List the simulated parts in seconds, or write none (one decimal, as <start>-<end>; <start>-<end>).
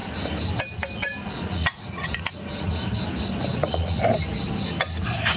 1.2-2.7; 3.5-4.0